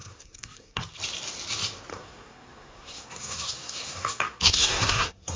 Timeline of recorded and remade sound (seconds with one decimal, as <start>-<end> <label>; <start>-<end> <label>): 0.0-0.8 remade; 0.8-1.9 recorded; 1.9-5.4 remade